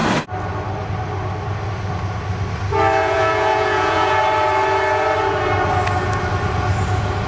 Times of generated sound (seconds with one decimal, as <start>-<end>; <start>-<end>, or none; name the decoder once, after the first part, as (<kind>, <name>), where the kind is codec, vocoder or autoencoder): 3.0-4.2 (vocoder, Vocos)